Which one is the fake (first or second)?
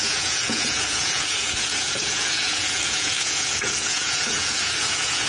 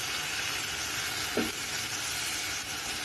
first